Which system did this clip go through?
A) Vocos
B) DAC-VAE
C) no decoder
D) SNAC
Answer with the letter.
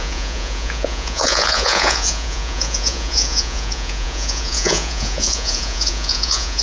A